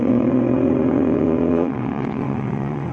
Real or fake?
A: fake